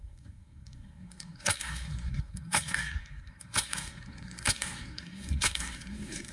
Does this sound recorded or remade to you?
remade